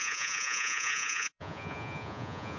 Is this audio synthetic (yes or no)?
yes